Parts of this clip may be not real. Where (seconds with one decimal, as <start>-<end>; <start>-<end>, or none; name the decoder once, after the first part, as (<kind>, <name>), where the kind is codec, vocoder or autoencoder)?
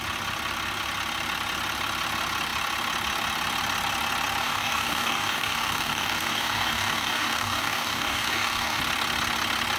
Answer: 4.4-8.8 (codec, DAC)